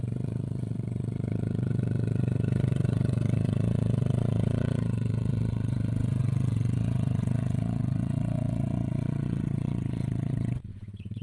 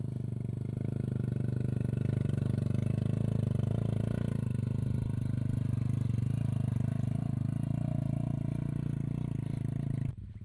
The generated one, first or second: first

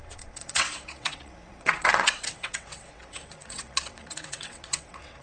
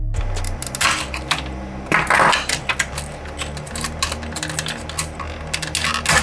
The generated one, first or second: first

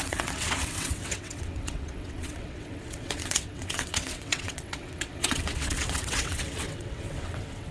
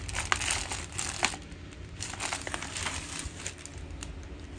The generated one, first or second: first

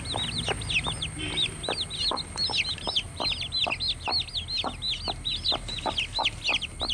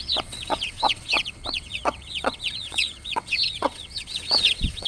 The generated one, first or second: second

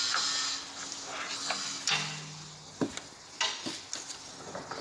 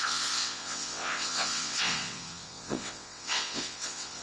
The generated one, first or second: second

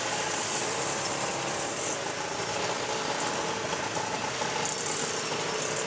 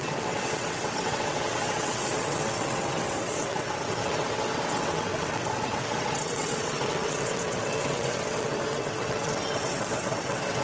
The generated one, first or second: second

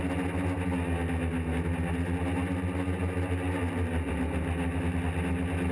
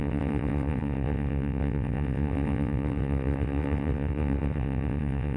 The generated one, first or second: second